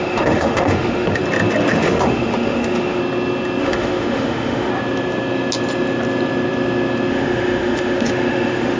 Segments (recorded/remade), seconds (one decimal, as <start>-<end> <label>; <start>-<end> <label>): 0.0-1.2 remade; 1.2-1.7 recorded; 1.7-3.0 remade; 3.0-3.6 recorded; 3.6-4.7 remade; 4.7-7.1 recorded; 7.1-8.8 remade